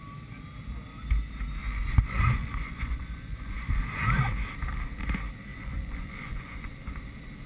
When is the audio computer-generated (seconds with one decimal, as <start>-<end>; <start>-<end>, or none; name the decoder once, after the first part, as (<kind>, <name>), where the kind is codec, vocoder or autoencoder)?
1.6-3.8 (vocoder, Vocos); 5.5-6.7